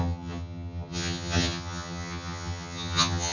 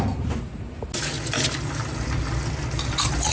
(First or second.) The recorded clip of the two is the second